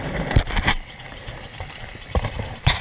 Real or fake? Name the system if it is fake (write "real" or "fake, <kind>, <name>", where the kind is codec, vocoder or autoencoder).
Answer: fake, vocoder, BigVGAN v2